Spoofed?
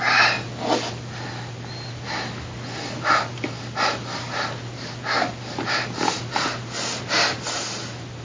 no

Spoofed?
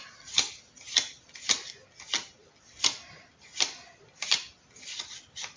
no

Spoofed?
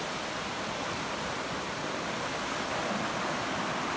no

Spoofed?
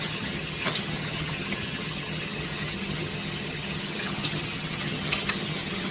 yes